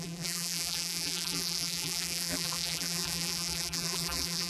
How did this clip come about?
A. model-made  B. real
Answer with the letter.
A